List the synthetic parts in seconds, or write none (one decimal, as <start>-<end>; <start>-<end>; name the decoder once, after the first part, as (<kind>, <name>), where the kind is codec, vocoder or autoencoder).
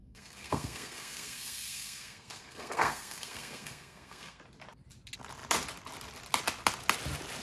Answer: 0.0-4.4 (codec, SNAC)